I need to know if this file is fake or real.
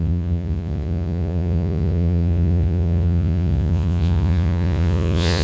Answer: fake